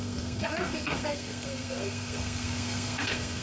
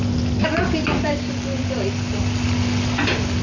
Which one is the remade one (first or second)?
first